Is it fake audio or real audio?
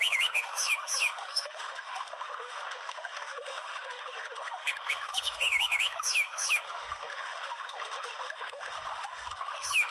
fake